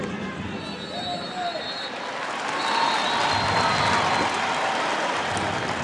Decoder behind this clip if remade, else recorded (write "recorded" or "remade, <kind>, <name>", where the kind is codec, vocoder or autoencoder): recorded